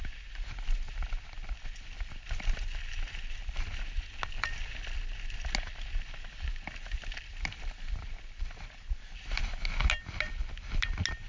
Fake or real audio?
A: real